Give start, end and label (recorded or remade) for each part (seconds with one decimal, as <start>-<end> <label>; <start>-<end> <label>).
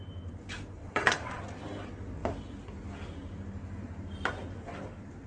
0.0-0.8 recorded; 0.8-1.4 remade; 1.4-5.3 recorded